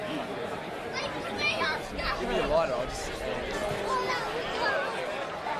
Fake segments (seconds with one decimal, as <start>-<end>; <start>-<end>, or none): 0.0-1.6